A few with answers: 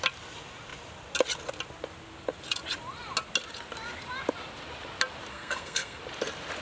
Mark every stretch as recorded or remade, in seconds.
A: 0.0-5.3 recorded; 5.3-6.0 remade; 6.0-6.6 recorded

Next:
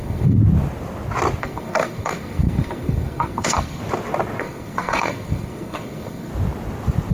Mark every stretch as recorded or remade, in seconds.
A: 0.0-0.4 remade; 0.4-1.4 recorded; 1.4-3.8 remade; 3.8-4.4 recorded; 4.4-6.3 remade; 6.3-7.1 recorded

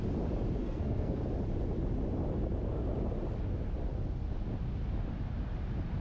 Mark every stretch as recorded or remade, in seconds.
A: 0.0-0.6 recorded; 0.6-1.2 remade; 1.2-6.0 recorded